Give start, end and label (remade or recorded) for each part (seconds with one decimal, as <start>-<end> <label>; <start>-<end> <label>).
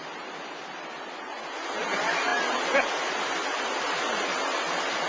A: 0.0-0.6 recorded; 0.6-1.1 remade; 1.1-2.3 recorded; 2.3-5.1 remade